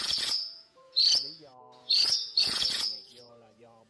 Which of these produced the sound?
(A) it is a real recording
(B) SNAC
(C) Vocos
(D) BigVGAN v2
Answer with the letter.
C